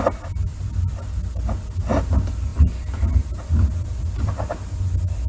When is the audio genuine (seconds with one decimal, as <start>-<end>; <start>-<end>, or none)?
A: 0.0-5.3